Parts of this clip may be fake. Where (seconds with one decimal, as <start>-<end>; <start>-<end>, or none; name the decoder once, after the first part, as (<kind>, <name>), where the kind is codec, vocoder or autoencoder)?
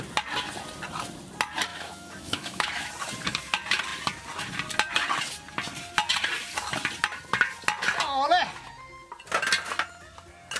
1.7-2.9 (autoencoder, DAC-VAE)